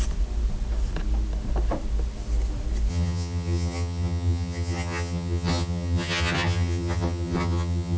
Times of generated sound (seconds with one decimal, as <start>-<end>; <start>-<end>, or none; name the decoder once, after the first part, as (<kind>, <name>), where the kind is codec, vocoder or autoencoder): 2.9-8.0 (vocoder, HiFi-GAN)